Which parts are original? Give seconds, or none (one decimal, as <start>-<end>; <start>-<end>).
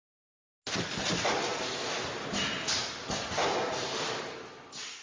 0.0-5.0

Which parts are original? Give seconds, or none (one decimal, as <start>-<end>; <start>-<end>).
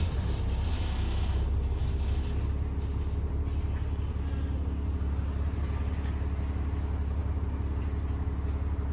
0.0-8.9